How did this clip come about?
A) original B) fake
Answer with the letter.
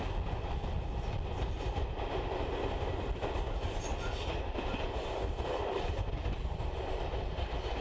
A